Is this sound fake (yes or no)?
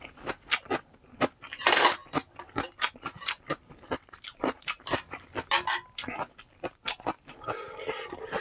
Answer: no